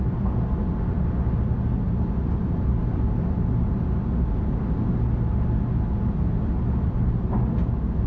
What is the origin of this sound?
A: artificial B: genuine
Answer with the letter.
B